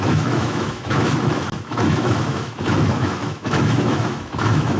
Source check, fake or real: fake